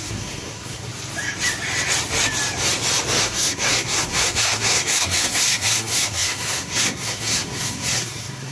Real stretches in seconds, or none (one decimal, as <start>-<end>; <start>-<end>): 0.9-3.2